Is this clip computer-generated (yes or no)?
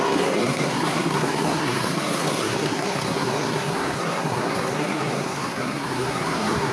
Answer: yes